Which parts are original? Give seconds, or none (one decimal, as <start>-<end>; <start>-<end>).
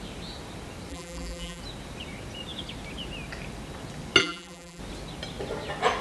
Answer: 0.0-0.9; 1.6-4.2; 4.8-6.0